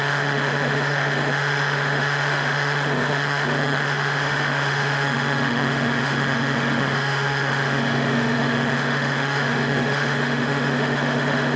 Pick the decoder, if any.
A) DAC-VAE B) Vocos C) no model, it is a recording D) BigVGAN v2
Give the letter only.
A